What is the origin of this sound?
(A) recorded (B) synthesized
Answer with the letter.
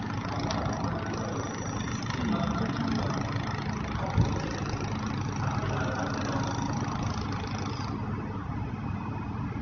A